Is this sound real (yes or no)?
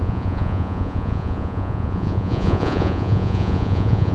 no